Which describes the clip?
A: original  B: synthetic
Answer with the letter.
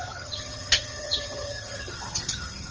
B